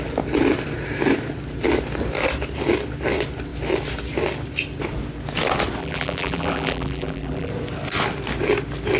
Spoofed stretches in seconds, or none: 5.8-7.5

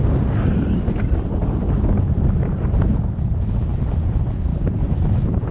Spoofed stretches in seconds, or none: 4.5-5.1